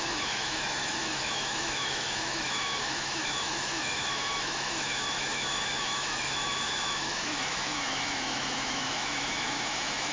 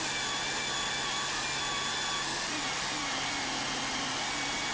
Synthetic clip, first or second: first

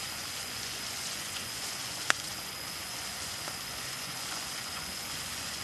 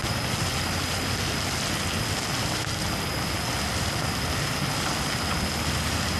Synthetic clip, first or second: first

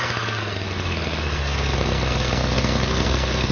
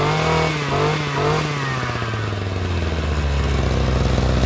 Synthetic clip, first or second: first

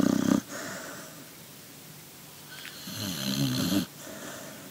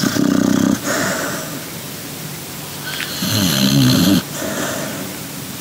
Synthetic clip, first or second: first